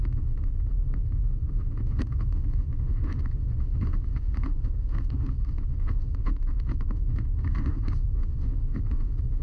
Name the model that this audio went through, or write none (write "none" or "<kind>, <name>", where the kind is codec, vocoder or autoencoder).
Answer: autoencoder, DAC-VAE